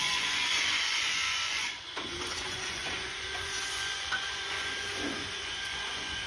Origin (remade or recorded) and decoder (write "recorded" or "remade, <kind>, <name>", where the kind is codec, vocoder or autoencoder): remade, vocoder, Vocos